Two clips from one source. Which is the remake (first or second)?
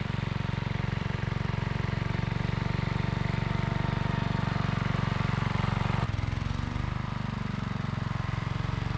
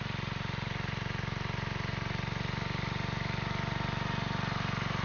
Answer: first